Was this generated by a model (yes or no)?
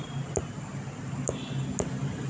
no